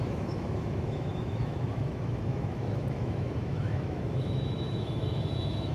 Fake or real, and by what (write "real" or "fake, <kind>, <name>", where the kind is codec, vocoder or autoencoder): fake, autoencoder, DAC-VAE